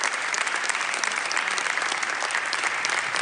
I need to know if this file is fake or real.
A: fake